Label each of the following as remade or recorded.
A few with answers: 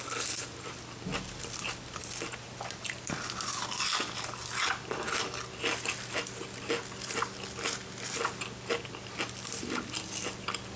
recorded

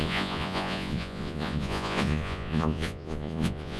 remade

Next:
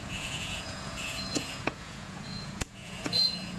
remade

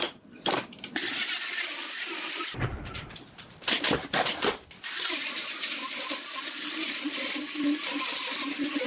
recorded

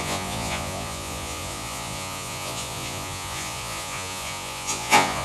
remade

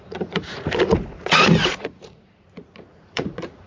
remade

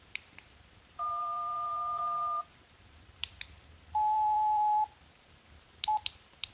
remade